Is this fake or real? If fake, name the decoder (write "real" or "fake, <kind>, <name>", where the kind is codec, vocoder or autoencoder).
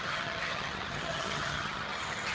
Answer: fake, vocoder, HiFi-GAN